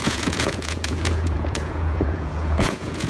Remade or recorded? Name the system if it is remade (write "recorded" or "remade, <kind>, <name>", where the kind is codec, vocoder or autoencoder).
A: remade, vocoder, Vocos